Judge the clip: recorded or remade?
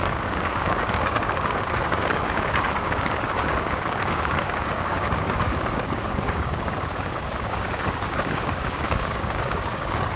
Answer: remade